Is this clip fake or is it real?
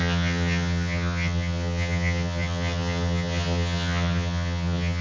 fake